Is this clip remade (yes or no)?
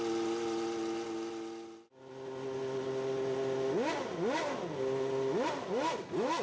no